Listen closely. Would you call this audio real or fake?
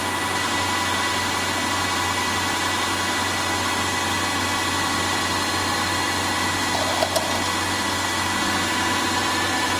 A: real